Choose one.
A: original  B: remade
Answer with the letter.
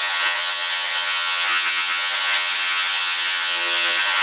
B